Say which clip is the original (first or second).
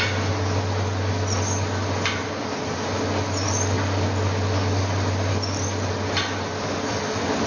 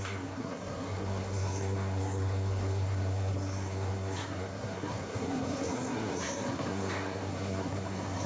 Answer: first